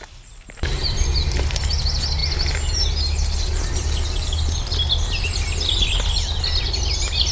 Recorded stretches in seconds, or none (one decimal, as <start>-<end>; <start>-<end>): 0.0-0.8; 1.7-7.3